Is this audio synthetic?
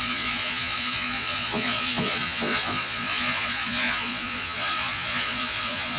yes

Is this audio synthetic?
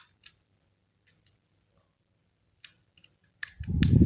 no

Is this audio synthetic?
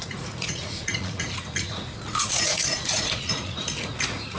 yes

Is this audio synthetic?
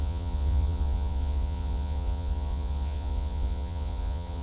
yes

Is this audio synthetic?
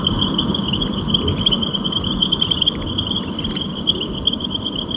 no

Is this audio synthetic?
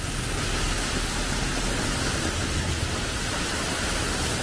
no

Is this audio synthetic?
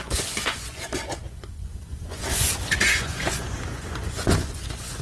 yes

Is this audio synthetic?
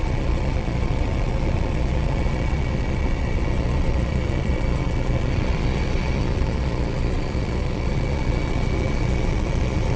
yes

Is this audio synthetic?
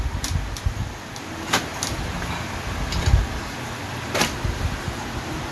no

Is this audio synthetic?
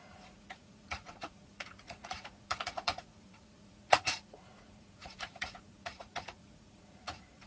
yes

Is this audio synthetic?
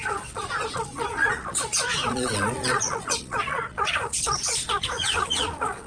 yes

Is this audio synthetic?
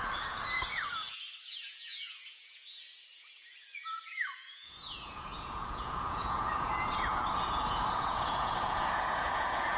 yes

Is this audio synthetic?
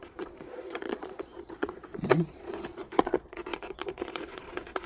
yes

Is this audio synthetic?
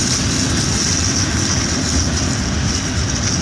no